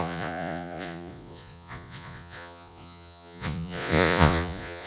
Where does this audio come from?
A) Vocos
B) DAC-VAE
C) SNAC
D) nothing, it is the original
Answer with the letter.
A